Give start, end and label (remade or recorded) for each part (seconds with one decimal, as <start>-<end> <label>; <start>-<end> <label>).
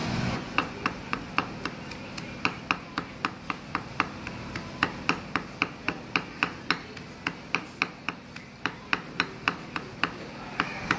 0.0-1.3 remade; 1.3-11.0 recorded